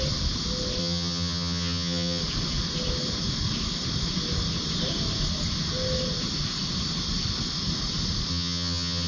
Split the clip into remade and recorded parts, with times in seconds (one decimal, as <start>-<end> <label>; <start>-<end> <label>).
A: 0.0-0.8 recorded; 0.8-2.2 remade; 2.2-8.3 recorded; 8.3-9.1 remade